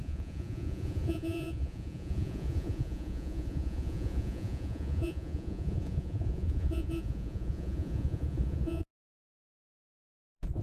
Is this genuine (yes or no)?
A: no